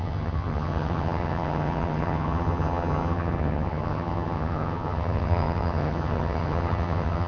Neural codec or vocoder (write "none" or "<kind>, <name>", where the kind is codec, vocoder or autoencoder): vocoder, HiFi-GAN